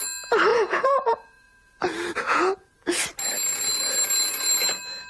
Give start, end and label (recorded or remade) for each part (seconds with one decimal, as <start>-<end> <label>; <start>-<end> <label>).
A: 0.0-0.5 recorded; 0.5-3.0 remade; 3.0-5.1 recorded